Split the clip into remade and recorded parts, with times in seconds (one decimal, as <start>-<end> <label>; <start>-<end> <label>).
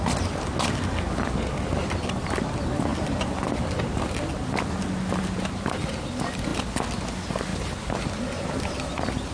0.0-2.9 recorded; 2.9-4.0 remade; 4.0-7.5 recorded; 7.5-8.5 remade; 8.5-9.3 recorded